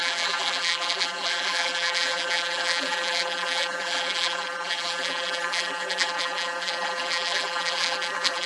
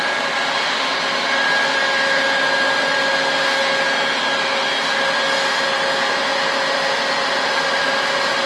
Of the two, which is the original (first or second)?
second